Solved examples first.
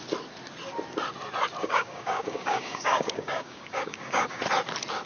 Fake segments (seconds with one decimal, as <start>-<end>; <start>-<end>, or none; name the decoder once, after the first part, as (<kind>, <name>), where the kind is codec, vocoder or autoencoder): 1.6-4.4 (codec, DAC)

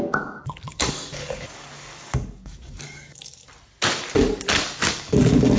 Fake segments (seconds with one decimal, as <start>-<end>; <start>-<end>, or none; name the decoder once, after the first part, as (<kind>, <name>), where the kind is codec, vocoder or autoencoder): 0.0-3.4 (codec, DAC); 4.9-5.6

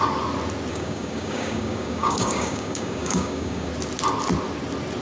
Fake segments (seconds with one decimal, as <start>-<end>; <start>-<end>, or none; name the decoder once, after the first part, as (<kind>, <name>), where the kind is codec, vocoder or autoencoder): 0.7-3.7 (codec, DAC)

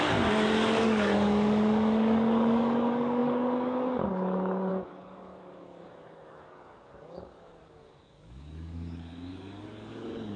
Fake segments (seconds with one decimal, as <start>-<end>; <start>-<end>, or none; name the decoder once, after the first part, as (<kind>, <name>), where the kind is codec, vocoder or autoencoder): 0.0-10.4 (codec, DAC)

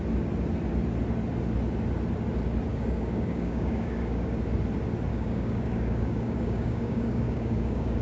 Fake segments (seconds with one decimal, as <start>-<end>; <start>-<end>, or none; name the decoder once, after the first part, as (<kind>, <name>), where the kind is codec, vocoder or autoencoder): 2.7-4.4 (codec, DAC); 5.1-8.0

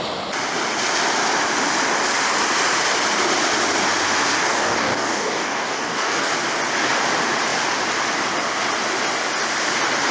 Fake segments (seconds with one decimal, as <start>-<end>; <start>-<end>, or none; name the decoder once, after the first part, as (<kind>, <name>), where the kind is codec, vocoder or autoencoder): 4.4-6.3 (codec, DAC)